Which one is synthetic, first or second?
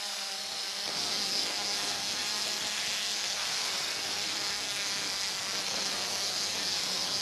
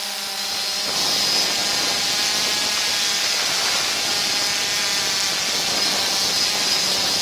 first